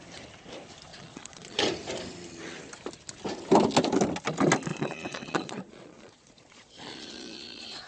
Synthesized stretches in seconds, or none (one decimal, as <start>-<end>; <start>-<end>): 0.9-1.6; 4.7-7.9